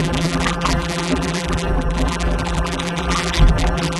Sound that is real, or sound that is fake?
fake